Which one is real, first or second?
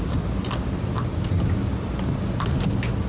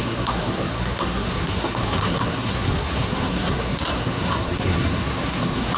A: first